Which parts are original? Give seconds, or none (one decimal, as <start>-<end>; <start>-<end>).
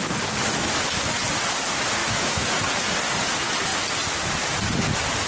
0.0-2.0; 2.5-5.3